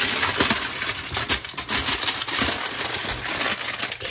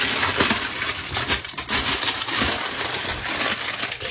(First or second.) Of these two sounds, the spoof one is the second